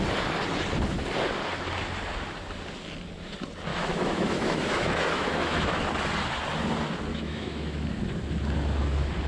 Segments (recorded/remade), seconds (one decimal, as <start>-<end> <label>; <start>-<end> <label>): 0.0-3.7 recorded; 3.7-5.8 remade; 5.8-7.1 recorded; 7.1-7.9 remade; 7.9-9.3 recorded